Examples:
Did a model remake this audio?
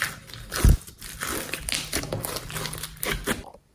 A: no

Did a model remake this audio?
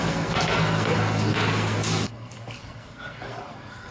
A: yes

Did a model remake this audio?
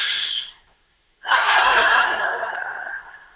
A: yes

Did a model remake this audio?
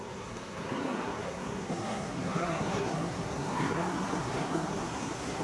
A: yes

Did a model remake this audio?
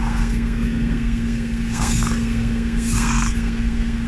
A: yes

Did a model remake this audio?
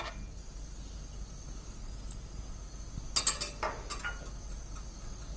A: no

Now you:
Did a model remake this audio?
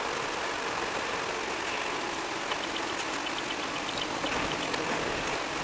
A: no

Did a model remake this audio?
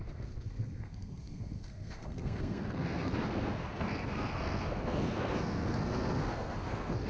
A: yes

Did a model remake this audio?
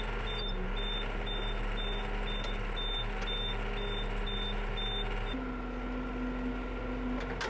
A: no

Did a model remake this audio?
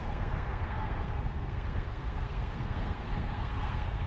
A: yes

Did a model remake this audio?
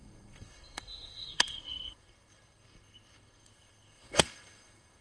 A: yes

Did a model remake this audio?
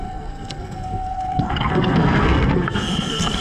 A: yes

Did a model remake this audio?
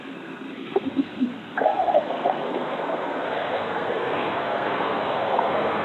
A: yes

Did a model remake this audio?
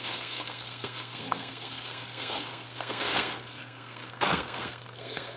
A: yes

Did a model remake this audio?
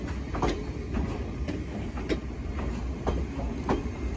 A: no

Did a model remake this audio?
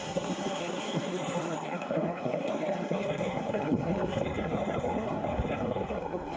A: yes